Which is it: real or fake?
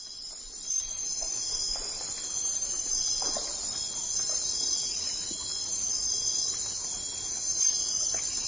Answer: real